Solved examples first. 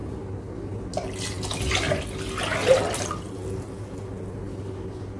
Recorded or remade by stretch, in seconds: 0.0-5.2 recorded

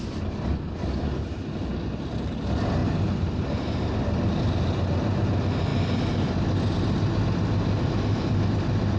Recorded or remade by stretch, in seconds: 0.0-9.0 recorded

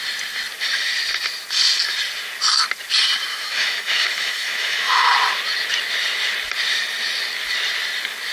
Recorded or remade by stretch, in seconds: 0.0-3.3 recorded; 3.3-5.1 remade; 5.1-8.3 recorded

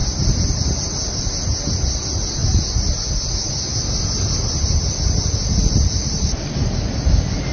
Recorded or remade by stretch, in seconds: 0.0-7.5 recorded

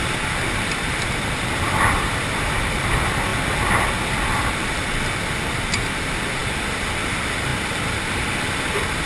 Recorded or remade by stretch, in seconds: 0.0-3.3 remade; 3.3-5.5 recorded; 5.5-6.4 remade; 6.4-7.1 recorded; 7.1-7.5 remade; 7.5-8.1 recorded; 8.1-9.1 remade